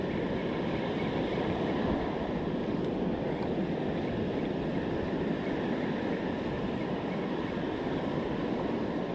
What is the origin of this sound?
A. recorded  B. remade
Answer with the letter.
A